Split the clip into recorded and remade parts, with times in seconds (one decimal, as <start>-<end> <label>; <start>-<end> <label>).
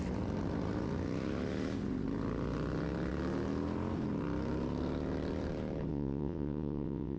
0.0-5.9 recorded; 5.9-7.2 remade